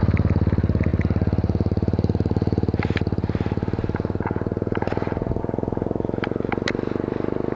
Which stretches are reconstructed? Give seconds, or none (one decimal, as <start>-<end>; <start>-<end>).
0.9-5.4